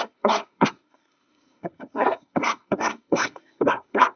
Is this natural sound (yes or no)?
no